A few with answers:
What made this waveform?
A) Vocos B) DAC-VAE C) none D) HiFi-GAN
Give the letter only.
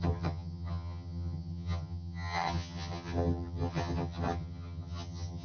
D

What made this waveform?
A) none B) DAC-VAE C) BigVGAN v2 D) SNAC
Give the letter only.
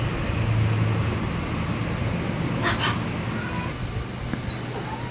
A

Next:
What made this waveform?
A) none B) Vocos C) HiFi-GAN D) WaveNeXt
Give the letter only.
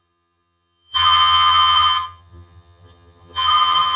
C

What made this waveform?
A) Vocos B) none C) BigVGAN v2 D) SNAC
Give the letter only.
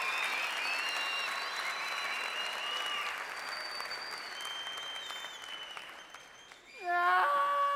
B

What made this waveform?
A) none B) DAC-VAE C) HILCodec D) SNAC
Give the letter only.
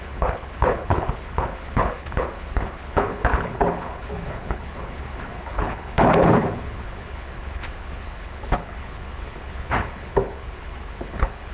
C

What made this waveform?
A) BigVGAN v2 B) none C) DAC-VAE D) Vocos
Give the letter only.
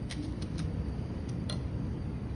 A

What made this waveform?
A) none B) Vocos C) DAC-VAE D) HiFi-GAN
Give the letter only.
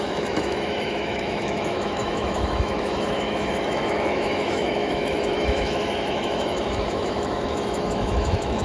C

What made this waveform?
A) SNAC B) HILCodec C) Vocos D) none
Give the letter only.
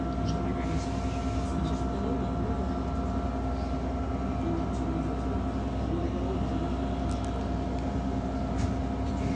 D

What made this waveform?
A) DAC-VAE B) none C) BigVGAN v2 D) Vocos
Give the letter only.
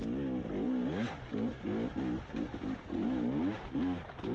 B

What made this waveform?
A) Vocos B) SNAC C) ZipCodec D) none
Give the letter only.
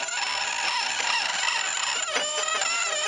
D